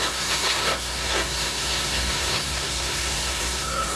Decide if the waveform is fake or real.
fake